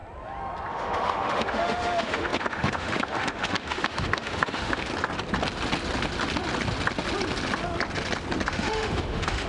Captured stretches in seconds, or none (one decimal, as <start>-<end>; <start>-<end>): 0.0-0.7; 4.9-8.5